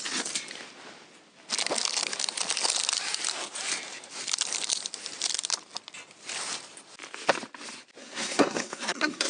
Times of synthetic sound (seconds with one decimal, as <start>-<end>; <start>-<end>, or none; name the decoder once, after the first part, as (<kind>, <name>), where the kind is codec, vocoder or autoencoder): 8.0-9.3 (codec, SNAC)